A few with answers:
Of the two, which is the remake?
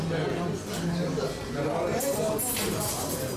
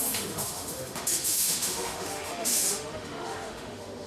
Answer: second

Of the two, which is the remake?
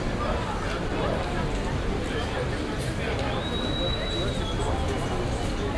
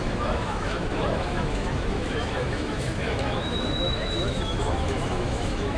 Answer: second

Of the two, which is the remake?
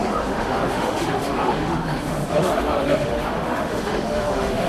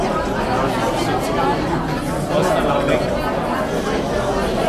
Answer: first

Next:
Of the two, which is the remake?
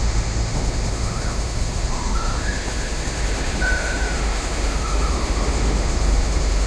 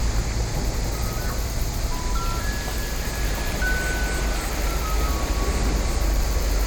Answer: first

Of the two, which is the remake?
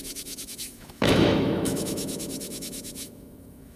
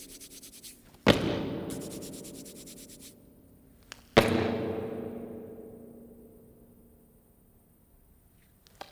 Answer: first